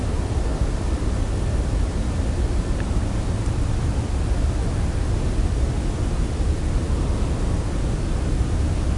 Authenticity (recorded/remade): recorded